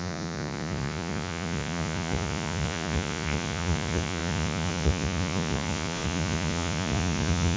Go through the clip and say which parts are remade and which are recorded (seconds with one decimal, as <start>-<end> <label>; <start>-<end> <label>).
0.0-7.6 remade